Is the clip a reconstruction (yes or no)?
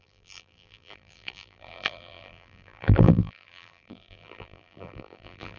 yes